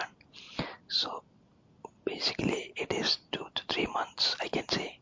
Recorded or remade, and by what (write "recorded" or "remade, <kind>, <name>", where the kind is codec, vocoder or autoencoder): recorded